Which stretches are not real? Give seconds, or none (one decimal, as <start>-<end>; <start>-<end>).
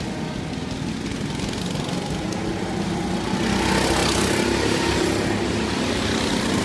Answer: 1.1-1.6; 4.0-5.0